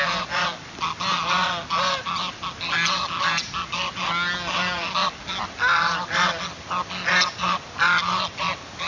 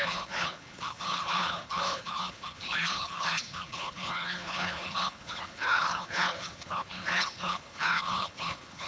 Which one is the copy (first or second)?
second